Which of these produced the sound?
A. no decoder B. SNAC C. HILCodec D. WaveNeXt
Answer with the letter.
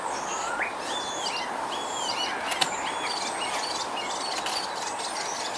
A